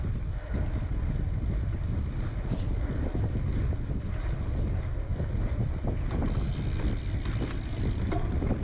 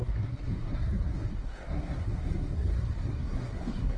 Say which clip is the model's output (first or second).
second